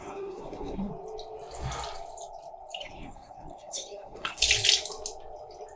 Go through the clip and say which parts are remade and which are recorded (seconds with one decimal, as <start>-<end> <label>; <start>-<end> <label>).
0.0-0.9 remade; 0.9-2.8 recorded; 2.8-4.4 remade; 4.4-5.8 recorded

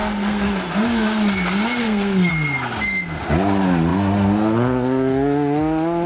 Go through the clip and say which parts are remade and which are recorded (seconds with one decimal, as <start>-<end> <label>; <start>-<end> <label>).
0.0-0.5 remade; 0.5-1.8 recorded; 1.8-2.3 remade; 2.3-6.1 recorded

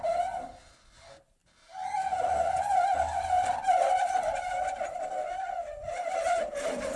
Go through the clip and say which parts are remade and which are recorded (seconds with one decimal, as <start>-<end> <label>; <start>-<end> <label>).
0.0-7.0 recorded